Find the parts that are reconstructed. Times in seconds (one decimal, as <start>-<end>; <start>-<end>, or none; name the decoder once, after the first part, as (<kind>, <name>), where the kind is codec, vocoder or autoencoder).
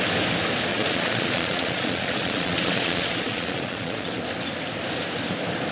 0.7-4.1 (vocoder, Vocos)